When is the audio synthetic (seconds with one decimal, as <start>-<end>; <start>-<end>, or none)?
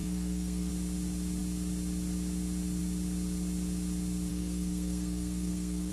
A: 0.0-0.7; 4.3-5.9